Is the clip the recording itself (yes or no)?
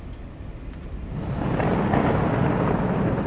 yes